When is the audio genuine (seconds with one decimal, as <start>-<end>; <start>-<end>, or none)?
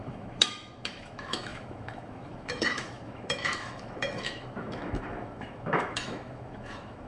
none